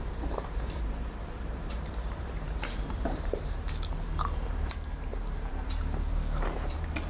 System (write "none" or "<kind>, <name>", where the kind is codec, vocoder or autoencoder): vocoder, BigVGAN v2